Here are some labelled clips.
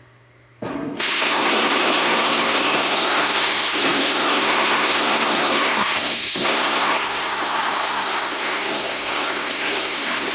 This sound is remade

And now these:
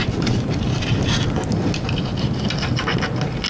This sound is recorded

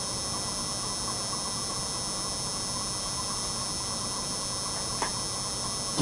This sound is recorded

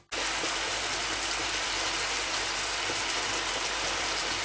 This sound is recorded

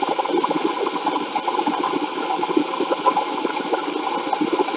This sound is recorded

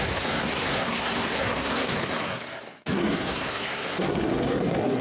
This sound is remade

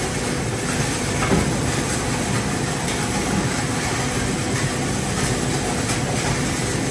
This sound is recorded